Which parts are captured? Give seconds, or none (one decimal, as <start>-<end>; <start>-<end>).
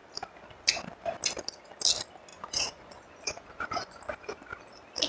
0.0-2.3; 4.0-5.1